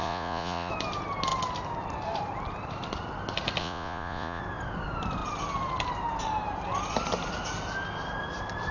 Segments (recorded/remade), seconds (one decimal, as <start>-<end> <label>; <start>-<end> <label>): 0.0-0.7 remade; 0.7-3.6 recorded; 3.6-4.4 remade; 4.4-8.7 recorded